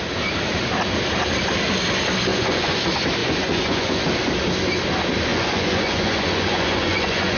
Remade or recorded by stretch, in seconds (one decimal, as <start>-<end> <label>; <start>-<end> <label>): 0.0-2.3 recorded; 2.3-2.8 remade; 2.8-3.2 recorded; 3.2-4.0 remade; 4.0-5.3 recorded; 5.3-7.4 remade